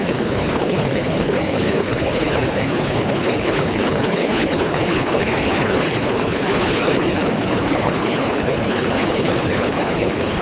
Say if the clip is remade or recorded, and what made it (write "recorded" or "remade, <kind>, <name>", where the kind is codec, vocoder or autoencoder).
remade, codec, HILCodec